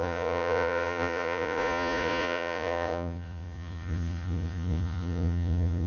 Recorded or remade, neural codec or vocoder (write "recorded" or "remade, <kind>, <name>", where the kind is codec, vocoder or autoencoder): remade, vocoder, Vocos